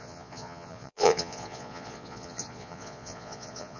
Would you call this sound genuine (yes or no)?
no